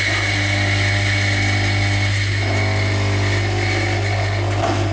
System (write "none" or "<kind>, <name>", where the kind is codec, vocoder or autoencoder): none